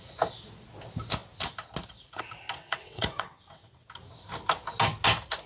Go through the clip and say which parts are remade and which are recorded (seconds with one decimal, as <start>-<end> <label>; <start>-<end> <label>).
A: 0.0-2.6 recorded; 2.6-3.9 remade; 3.9-5.5 recorded